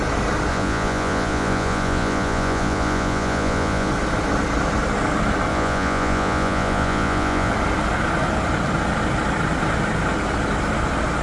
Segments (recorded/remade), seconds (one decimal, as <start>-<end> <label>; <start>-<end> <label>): 0.0-0.5 recorded; 0.5-3.9 remade; 3.9-5.5 recorded; 5.5-7.5 remade; 7.5-11.2 recorded